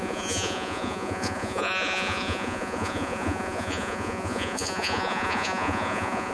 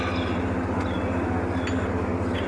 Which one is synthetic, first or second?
first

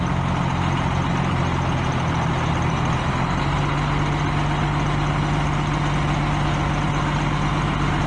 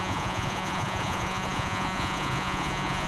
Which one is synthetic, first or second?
second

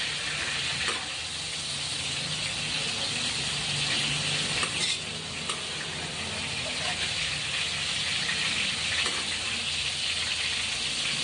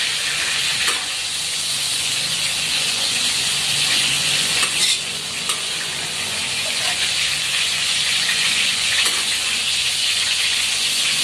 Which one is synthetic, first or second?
second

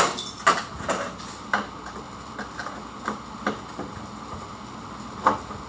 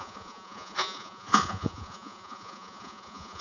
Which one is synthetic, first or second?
second